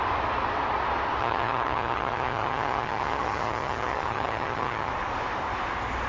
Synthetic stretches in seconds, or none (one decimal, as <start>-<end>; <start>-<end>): 1.2-4.9